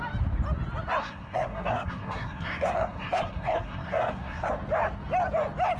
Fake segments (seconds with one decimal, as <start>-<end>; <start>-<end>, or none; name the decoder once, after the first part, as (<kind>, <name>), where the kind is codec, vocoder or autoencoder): 1.0-4.5 (codec, SNAC)